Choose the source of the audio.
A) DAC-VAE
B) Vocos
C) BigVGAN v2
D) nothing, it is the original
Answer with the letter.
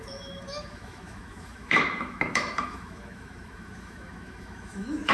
A